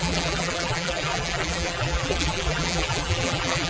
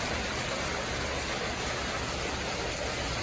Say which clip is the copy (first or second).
first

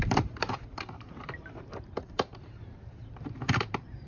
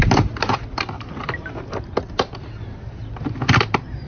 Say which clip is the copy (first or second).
first